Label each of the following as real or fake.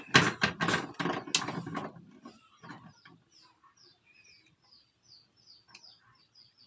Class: real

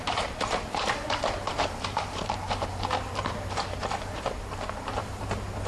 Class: fake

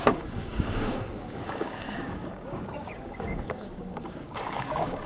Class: fake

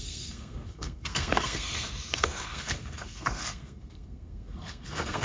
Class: fake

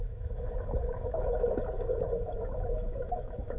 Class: fake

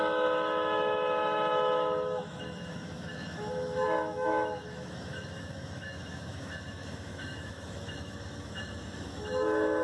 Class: fake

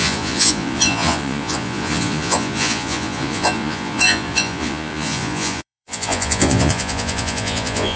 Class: fake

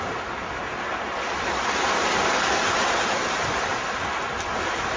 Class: real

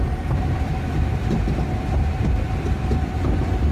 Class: real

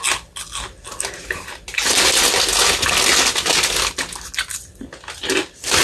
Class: real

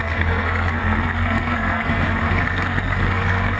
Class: fake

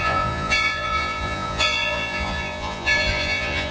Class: fake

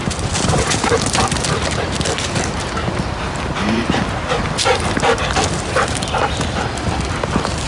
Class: real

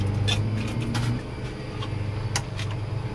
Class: real